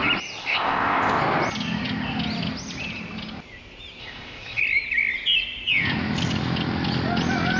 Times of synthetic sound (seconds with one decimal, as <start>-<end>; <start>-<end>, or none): 0.4-1.2; 4.0-4.6